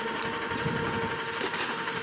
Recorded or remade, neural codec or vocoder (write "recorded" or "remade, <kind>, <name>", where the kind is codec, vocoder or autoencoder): recorded